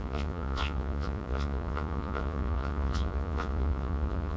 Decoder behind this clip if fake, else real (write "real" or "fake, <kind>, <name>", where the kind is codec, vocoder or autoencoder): fake, vocoder, Vocos